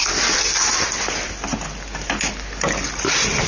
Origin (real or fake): real